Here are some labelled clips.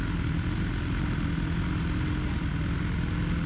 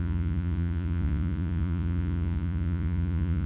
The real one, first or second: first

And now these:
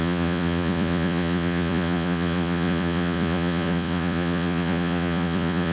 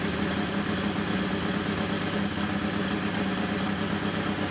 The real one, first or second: second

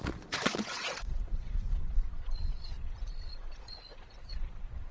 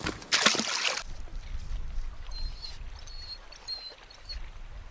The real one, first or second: second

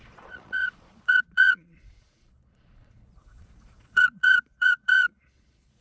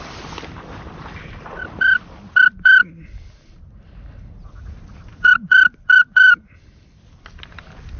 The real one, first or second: second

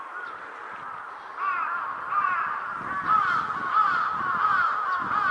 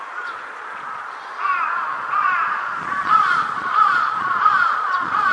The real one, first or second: first